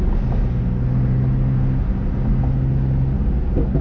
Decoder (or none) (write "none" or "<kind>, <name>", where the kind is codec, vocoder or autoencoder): none